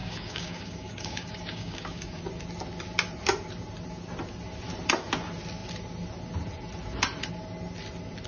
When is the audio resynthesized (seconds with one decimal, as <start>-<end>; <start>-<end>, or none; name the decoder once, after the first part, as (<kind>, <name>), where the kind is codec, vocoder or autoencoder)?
0.0-2.2 (codec, DAC)